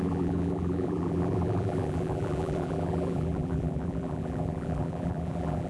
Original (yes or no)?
no